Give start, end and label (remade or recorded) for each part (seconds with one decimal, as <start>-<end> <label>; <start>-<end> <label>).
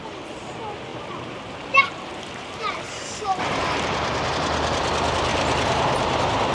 0.0-0.9 recorded; 0.9-4.3 remade; 4.3-5.3 recorded; 5.3-6.5 remade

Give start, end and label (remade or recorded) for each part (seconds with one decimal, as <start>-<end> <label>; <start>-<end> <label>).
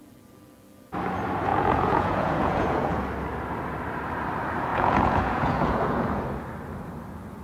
0.0-1.5 recorded; 1.5-3.0 remade; 3.0-4.7 recorded; 4.7-6.2 remade; 6.2-7.4 recorded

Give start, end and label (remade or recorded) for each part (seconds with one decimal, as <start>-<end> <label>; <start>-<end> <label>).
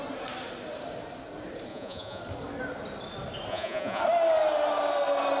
0.0-1.7 recorded; 1.7-2.2 remade; 2.2-3.5 recorded; 3.5-4.0 remade; 4.0-5.4 recorded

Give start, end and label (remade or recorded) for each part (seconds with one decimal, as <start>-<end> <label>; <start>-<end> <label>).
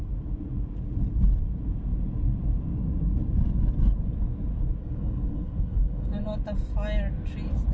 0.0-4.8 recorded; 4.8-6.2 remade; 6.2-7.7 recorded